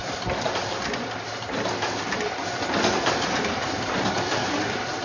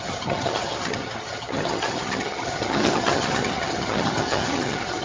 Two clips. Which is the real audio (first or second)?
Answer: first